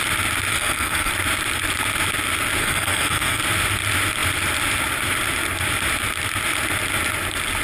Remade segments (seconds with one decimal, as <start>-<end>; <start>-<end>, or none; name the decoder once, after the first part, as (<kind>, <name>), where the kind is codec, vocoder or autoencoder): 0.5-1.1 (codec, SNAC); 2.6-3.4